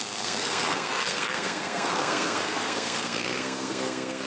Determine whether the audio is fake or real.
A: fake